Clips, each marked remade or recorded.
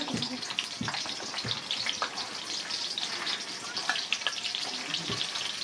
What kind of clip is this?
recorded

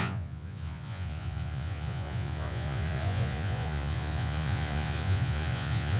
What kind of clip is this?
remade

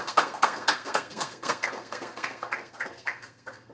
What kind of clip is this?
remade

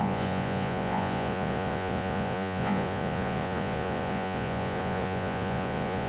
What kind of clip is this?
remade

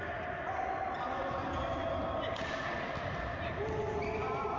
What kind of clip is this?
recorded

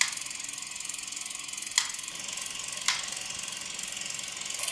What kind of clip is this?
recorded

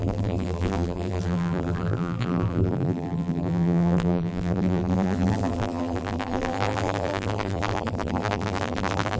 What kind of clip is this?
remade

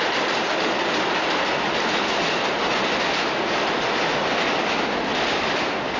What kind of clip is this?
recorded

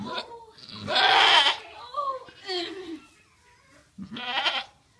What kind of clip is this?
recorded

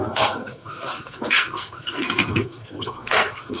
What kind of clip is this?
remade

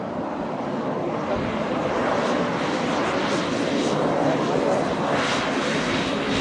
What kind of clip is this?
recorded